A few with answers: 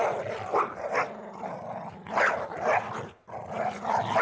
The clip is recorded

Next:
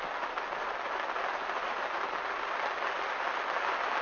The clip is recorded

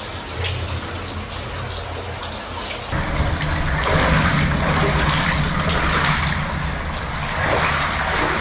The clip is recorded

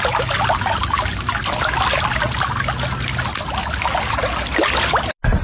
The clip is recorded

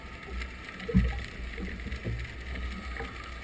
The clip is recorded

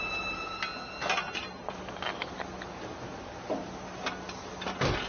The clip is recorded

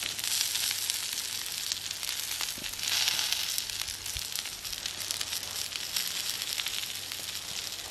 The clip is recorded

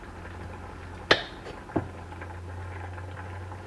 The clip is recorded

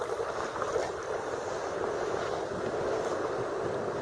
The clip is remade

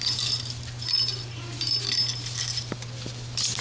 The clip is recorded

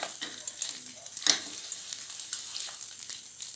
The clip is recorded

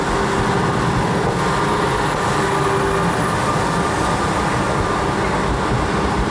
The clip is recorded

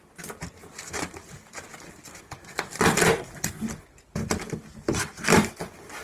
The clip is recorded